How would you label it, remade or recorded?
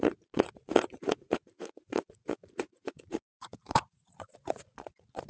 remade